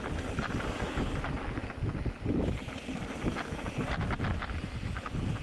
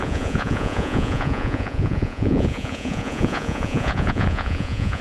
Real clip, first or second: first